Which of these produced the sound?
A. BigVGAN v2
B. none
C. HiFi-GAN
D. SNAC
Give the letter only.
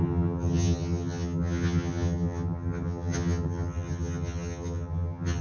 C